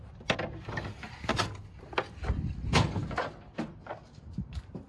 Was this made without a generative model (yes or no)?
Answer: yes